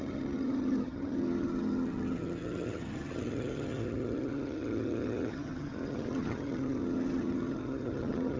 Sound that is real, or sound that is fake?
fake